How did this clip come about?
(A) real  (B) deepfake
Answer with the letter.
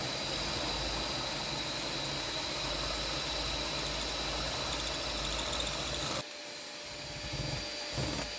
A